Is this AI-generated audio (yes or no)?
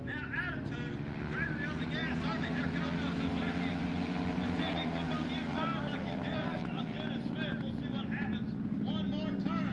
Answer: no